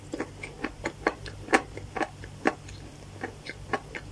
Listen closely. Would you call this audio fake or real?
fake